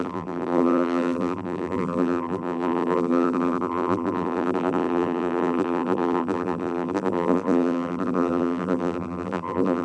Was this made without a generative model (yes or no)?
no